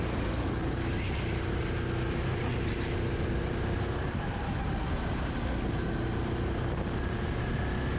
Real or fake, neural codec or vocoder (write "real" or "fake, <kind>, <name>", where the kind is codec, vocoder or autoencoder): real